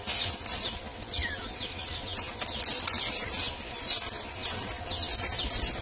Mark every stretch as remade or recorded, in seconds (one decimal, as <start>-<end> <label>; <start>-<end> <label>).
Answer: 0.0-5.8 recorded